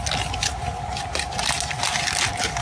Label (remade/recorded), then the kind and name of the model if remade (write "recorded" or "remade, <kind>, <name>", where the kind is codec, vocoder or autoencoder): recorded